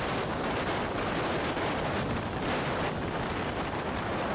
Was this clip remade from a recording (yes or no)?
yes